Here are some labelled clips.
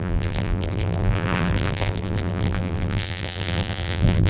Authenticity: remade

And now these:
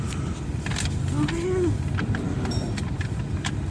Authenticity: recorded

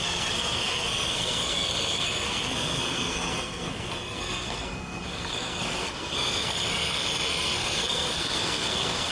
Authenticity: remade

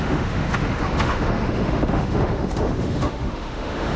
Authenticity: remade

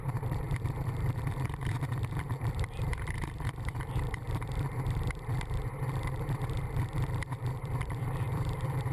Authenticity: remade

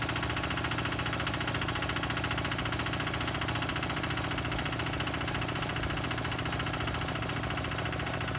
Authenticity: recorded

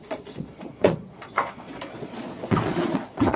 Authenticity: remade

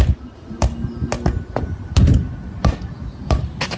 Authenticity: recorded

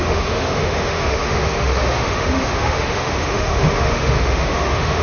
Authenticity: remade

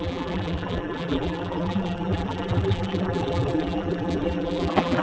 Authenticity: remade